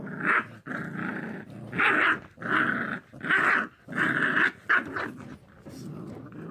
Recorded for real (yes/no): yes